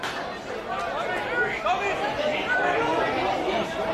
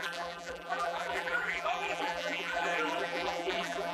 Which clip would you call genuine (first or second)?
first